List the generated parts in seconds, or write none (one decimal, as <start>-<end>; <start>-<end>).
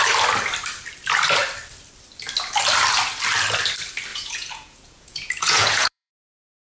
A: 4.1-6.1